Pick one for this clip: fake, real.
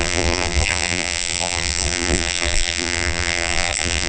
fake